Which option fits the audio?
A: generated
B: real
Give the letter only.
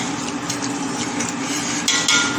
B